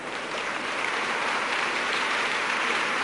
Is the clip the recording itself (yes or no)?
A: no